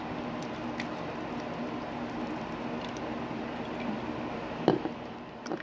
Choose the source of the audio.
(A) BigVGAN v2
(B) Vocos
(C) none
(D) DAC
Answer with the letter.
C